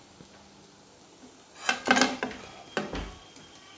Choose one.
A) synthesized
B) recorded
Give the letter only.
B